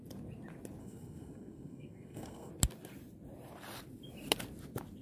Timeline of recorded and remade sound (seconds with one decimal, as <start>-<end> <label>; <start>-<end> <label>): 0.0-0.8 recorded; 0.8-2.5 remade; 2.5-5.0 recorded